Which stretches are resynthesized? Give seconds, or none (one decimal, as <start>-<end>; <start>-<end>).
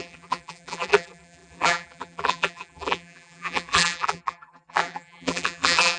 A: 0.0-6.0